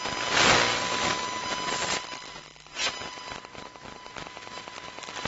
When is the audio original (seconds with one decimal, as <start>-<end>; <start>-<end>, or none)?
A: 0.0-5.3